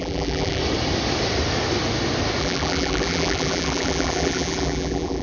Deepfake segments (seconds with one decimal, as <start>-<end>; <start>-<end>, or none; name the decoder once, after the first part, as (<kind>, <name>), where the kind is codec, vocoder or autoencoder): 0.0-0.6 (vocoder, BigVGAN v2); 2.4-5.2